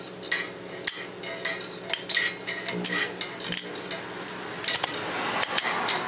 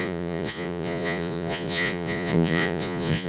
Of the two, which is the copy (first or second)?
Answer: second